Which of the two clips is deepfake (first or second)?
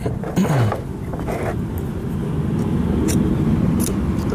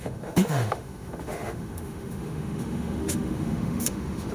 second